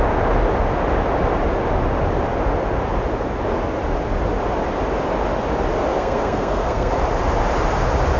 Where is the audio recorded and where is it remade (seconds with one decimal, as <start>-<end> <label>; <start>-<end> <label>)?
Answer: 0.0-5.9 recorded; 5.9-6.9 remade; 6.9-8.2 recorded